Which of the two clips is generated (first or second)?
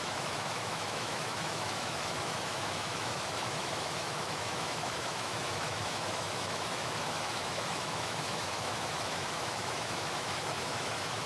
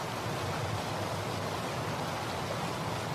first